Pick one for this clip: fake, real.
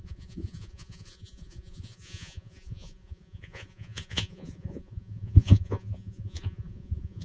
fake